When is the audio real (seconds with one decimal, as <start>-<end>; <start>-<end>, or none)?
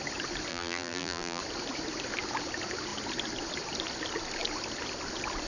0.0-0.5; 1.4-5.5